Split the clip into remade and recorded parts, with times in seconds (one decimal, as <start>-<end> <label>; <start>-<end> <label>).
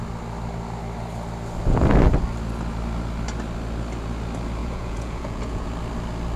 0.0-4.6 recorded; 4.6-5.7 remade; 5.7-6.4 recorded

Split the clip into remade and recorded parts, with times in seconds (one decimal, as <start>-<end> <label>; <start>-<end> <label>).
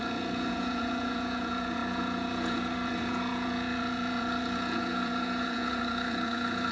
0.0-6.7 remade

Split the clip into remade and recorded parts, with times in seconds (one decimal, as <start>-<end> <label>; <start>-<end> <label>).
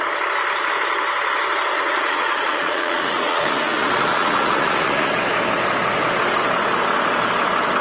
0.0-1.7 recorded; 1.7-5.1 remade; 5.1-7.8 recorded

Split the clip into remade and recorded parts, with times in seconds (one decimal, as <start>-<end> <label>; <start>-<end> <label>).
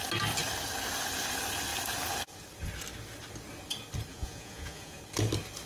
0.0-4.1 recorded; 4.1-5.0 remade; 5.0-5.7 recorded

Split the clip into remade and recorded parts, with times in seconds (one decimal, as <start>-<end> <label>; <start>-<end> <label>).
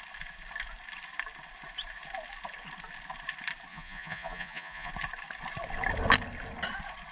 0.0-3.7 recorded; 3.7-4.9 remade; 4.9-7.1 recorded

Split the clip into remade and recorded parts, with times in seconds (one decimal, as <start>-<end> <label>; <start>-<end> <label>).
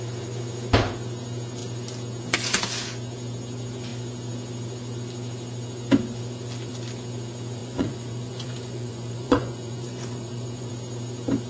0.0-7.6 recorded; 7.6-10.7 remade; 10.7-11.5 recorded